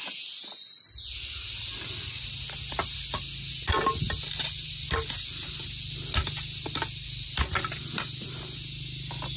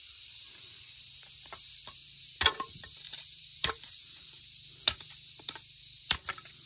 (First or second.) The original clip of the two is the first